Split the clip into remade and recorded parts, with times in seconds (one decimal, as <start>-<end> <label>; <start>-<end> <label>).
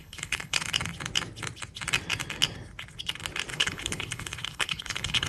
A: 0.0-0.7 remade; 0.7-3.5 recorded; 3.5-5.3 remade